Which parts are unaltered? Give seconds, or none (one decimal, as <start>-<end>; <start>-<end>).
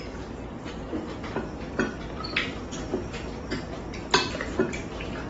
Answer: 0.0-5.3